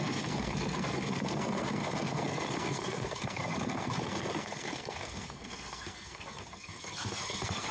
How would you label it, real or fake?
fake